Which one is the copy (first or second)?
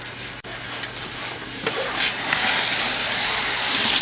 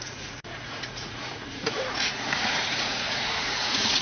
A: second